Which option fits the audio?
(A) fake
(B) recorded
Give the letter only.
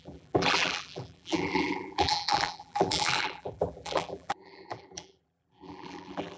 A